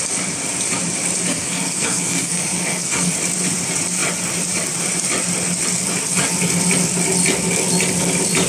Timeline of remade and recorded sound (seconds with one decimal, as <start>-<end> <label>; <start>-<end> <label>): 0.0-1.3 recorded; 1.3-3.1 remade; 3.1-8.5 recorded